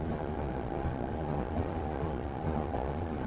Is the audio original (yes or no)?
no